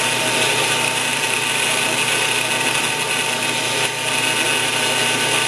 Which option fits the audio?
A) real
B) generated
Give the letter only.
A